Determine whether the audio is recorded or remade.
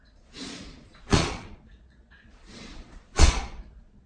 remade